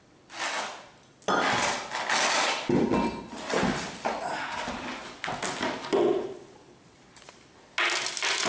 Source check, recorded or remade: recorded